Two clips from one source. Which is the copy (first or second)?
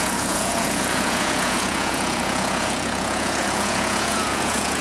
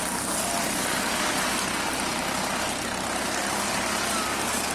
first